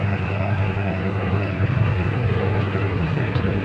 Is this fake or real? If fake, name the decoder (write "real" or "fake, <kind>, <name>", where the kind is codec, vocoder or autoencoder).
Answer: fake, codec, SNAC